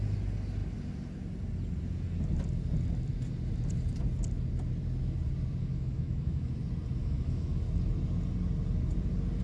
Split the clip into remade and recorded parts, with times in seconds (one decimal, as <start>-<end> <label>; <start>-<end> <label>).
0.0-5.6 recorded; 5.6-6.5 remade; 6.5-7.0 recorded; 7.0-7.6 remade; 7.6-9.4 recorded